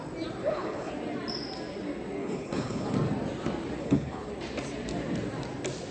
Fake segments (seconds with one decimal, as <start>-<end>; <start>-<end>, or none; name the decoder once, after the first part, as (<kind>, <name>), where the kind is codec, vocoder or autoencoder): 0.4-0.9 (codec, HILCodec); 2.2-2.9; 3.8-4.3